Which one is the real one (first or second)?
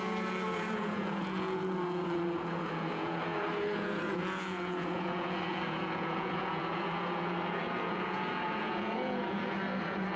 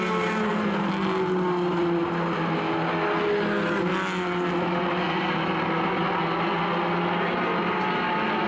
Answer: second